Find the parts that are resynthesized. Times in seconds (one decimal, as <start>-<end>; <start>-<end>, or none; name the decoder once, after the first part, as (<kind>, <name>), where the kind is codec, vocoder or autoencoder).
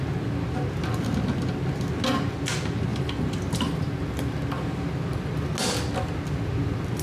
none